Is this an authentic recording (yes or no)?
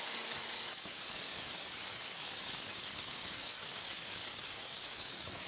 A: no